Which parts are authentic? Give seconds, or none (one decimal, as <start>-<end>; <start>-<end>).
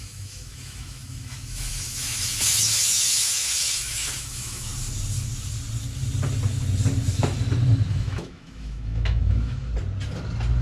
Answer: 4.7-7.9; 9.7-10.6